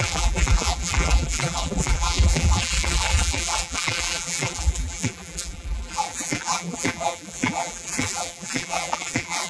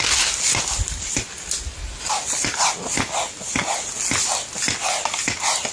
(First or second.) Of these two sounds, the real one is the second